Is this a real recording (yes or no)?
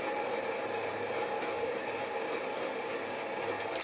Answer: yes